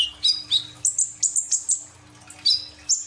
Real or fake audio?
real